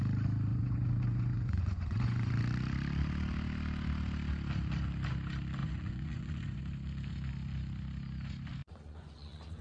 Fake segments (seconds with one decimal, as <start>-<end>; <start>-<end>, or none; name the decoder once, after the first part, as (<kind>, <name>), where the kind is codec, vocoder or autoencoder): 0.5-2.3 (vocoder, Vocos); 5.6-6.6; 8.6-9.6